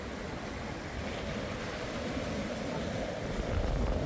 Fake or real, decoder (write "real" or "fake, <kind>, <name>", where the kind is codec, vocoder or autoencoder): fake, vocoder, BigVGAN v2